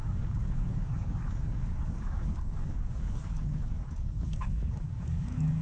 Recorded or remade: remade